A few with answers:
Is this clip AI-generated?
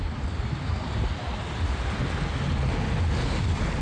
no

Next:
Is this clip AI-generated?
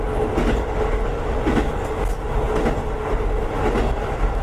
no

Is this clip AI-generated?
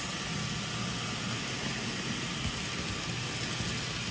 no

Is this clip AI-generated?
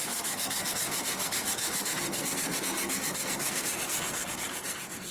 yes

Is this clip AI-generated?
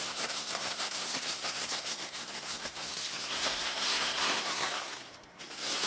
yes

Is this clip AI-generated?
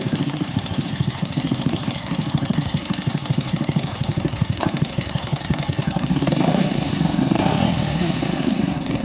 yes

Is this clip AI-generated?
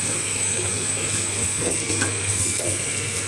yes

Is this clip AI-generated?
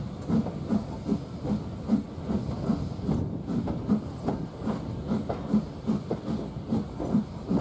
no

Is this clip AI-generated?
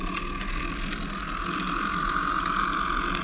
no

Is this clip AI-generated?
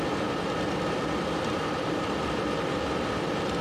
no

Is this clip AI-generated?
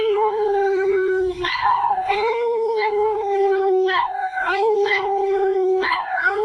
yes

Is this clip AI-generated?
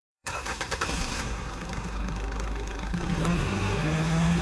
yes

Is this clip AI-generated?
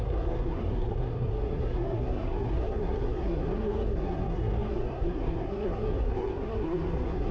yes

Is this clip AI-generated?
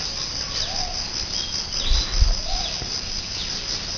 no